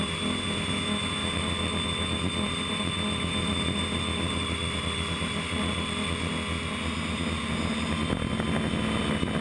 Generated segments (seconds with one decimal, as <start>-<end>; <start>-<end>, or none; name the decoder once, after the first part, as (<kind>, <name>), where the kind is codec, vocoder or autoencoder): 1.2-6.3 (vocoder, BigVGAN v2)